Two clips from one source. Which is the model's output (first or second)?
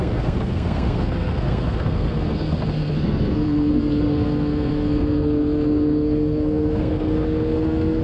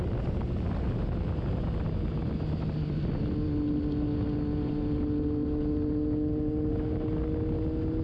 first